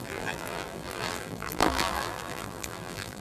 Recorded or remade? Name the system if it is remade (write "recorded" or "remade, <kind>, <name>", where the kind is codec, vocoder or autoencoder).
remade, vocoder, BigVGAN v2